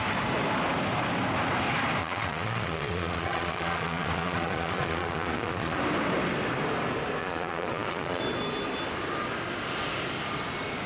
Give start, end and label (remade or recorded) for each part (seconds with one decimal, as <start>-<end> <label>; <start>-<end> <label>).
0.0-2.0 recorded; 2.0-5.8 remade; 5.8-7.2 recorded; 7.2-8.2 remade; 8.2-10.9 recorded